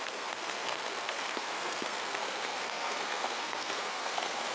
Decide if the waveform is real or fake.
fake